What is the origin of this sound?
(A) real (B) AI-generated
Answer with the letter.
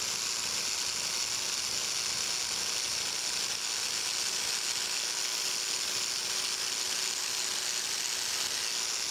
A